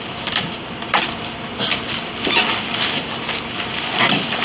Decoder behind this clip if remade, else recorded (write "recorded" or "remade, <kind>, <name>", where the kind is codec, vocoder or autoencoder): recorded